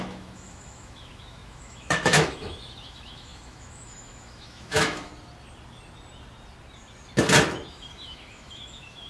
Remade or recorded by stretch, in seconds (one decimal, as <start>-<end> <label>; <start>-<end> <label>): 0.0-5.1 remade; 5.1-7.7 recorded; 7.7-9.1 remade